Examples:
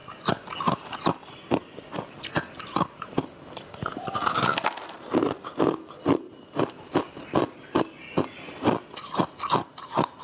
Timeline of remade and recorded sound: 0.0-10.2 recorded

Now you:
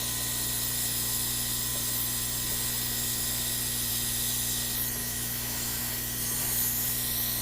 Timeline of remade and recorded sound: 0.0-5.0 recorded; 5.0-5.8 remade; 5.8-7.4 recorded

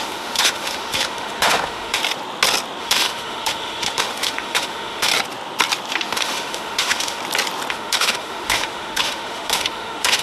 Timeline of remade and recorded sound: 0.0-2.0 remade; 2.0-2.8 recorded; 2.8-5.1 remade; 5.1-5.9 recorded; 5.9-7.2 remade; 7.2-7.7 recorded; 7.7-10.2 remade

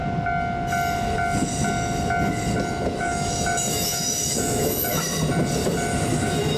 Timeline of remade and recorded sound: 0.0-2.9 recorded; 2.9-4.9 remade; 4.9-6.1 recorded; 6.1-6.6 remade

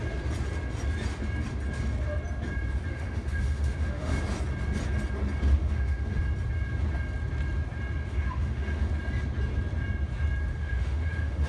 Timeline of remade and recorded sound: 0.0-2.9 recorded; 2.9-4.2 remade; 4.2-5.6 recorded; 5.6-6.2 remade; 6.2-8.1 recorded; 8.1-8.9 remade; 8.9-10.5 recorded; 10.5-11.5 remade

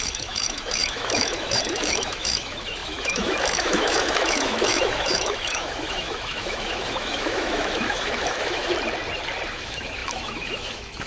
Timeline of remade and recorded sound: 0.0-8.7 remade; 8.7-9.5 recorded; 9.5-11.1 remade